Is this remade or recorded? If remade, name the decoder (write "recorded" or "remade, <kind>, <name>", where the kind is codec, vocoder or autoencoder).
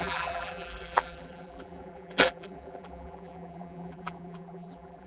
remade, vocoder, BigVGAN v2